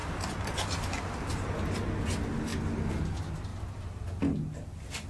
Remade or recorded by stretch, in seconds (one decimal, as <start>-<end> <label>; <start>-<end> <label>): 0.0-5.1 recorded